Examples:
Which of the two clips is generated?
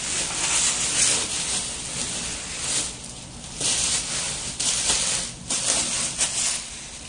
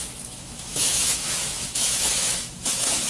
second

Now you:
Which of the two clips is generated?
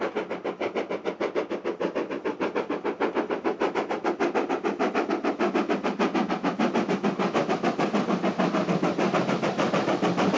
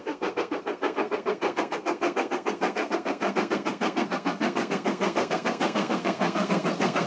second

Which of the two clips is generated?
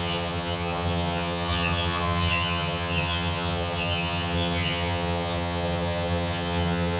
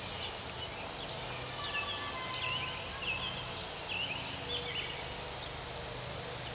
first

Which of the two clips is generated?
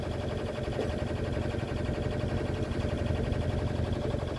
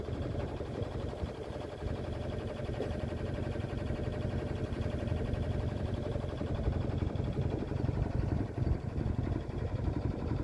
second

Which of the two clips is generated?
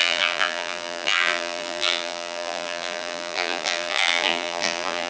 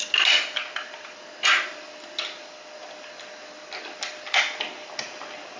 first